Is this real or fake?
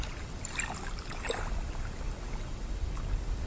real